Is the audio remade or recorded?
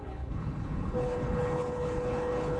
remade